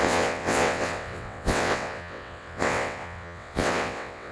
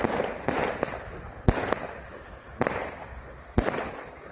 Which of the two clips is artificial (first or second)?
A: first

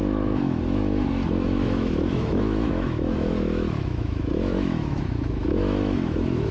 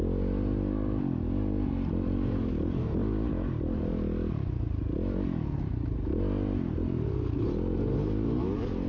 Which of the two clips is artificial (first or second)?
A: first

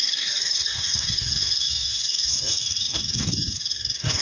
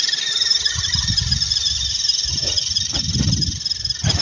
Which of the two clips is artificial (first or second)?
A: first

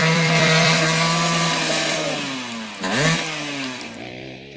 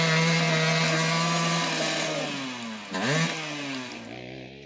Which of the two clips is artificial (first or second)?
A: first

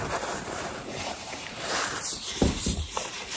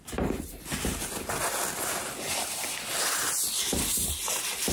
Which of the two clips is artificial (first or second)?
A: first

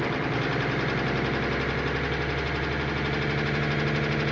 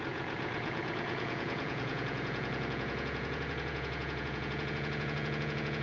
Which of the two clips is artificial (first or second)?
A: second